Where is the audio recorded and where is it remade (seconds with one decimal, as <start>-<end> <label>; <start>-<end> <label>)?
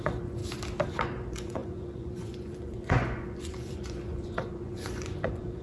0.0-0.4 remade; 0.4-0.9 recorded; 0.9-5.6 remade